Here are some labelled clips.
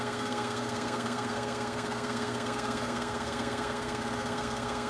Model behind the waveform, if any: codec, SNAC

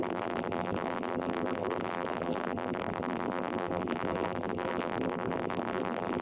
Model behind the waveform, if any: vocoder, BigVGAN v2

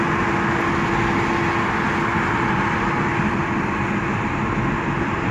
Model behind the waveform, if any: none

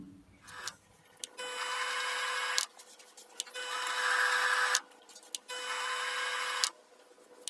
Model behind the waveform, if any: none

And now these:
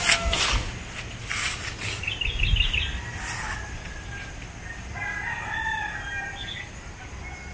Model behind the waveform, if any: none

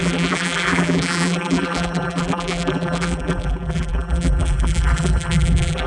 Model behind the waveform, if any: vocoder, BigVGAN v2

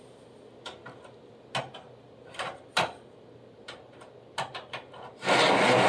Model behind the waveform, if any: none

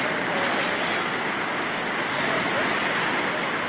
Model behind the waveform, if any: none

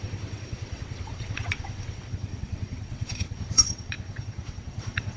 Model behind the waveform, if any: vocoder, WaveNeXt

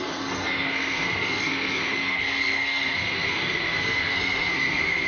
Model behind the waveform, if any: codec, SNAC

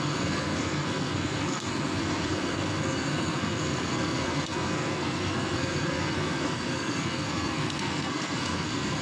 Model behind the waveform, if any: codec, SNAC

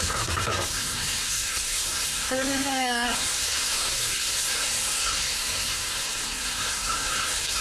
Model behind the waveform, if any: codec, SNAC